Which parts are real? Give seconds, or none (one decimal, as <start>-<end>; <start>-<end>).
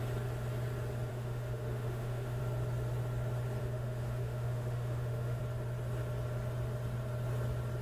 0.0-1.1; 2.4-3.6; 5.4-7.8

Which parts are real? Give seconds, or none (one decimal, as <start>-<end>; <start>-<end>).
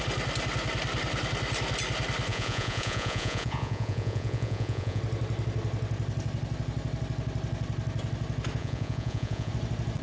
0.0-2.3; 5.0-8.6; 9.5-10.0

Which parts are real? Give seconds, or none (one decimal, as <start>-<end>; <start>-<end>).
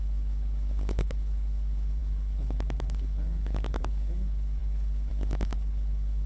none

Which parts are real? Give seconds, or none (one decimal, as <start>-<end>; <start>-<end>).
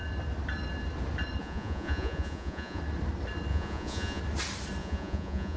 0.0-1.4; 2.8-3.5; 4.2-4.8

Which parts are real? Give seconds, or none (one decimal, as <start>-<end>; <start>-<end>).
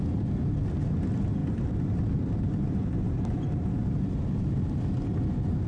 0.0-1.4; 4.8-5.7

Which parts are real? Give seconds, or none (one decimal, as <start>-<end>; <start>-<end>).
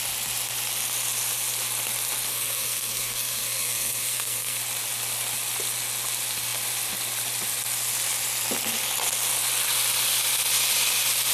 0.0-2.3; 4.6-11.3